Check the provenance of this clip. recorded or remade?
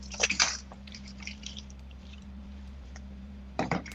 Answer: remade